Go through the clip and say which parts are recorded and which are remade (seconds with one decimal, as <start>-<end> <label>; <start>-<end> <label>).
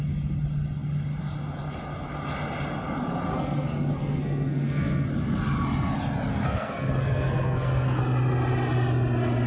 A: 0.0-3.3 recorded; 3.3-5.1 remade; 5.1-6.3 recorded; 6.3-8.0 remade; 8.0-9.5 recorded